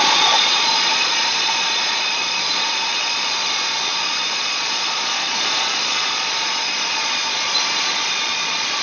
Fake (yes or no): yes